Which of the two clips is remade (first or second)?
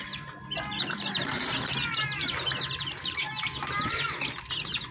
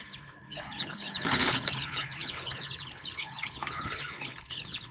second